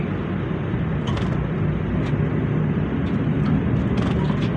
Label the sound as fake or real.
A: real